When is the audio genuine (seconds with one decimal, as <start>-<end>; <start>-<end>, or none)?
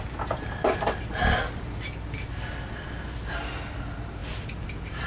0.0-5.1